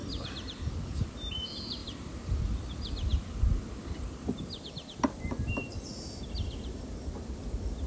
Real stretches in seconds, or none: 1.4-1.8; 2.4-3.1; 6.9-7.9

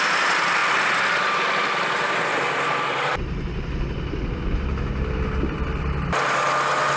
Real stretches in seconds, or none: 0.0-7.0

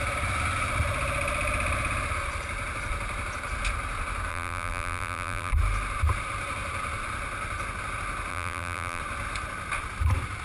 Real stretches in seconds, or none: 0.0-4.3; 5.5-8.3; 9.0-10.4

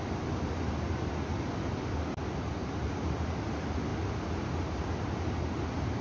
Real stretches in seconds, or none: 0.0-2.6; 3.5-6.0

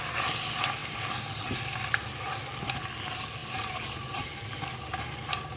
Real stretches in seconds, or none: 0.0-0.8; 2.0-3.4

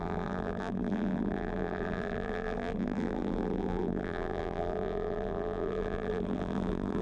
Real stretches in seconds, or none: none

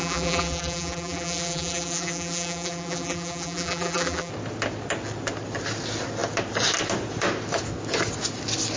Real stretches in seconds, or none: 4.3-8.8